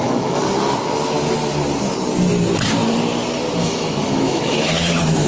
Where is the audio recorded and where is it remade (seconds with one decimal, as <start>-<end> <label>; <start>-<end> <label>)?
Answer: 0.0-0.4 remade; 0.4-3.6 recorded; 3.6-5.3 remade